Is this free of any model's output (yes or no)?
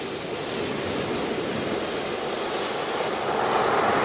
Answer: yes